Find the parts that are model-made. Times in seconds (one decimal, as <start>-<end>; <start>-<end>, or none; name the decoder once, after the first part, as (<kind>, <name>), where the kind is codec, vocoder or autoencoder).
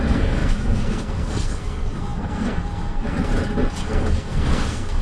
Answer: 0.0-3.3 (codec, SNAC); 3.8-5.0